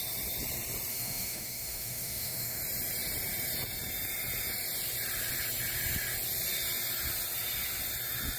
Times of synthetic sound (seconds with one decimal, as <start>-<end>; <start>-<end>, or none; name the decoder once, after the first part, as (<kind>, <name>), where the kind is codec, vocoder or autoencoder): 0.9-2.6 (autoencoder, DAC-VAE)